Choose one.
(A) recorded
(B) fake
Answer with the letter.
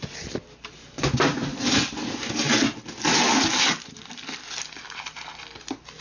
A